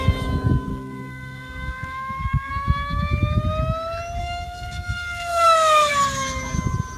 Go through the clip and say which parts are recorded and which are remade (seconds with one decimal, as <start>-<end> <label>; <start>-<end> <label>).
0.0-0.7 recorded; 0.7-2.5 remade; 2.5-4.2 recorded; 4.2-5.9 remade; 5.9-7.0 recorded